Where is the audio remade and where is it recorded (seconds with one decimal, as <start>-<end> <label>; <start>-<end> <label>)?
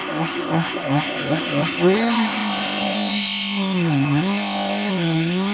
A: 0.0-5.5 remade